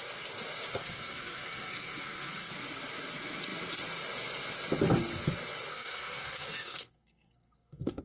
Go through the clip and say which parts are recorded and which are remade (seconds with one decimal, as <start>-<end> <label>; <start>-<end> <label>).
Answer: 0.0-0.8 recorded; 0.8-2.5 remade; 2.5-5.7 recorded; 5.7-8.0 remade